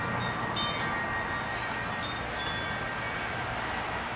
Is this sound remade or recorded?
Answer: recorded